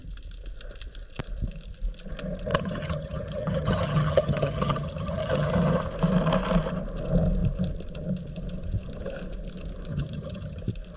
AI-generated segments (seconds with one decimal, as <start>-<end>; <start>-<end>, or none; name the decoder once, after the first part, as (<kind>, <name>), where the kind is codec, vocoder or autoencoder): 2.5-5.8 (vocoder, HiFi-GAN); 9.9-10.6

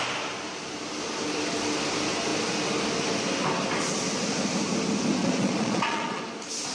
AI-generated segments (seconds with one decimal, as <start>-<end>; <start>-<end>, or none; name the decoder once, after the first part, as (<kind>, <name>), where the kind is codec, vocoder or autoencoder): 5.2-6.2 (vocoder, Vocos)